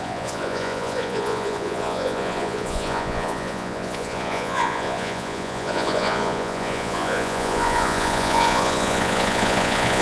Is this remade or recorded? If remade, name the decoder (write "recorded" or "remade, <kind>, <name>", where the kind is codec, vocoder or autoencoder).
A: remade, vocoder, Vocos